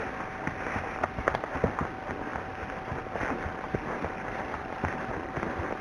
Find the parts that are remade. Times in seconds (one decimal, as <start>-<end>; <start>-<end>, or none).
none